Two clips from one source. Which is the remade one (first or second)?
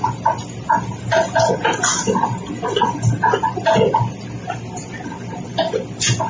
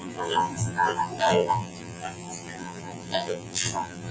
second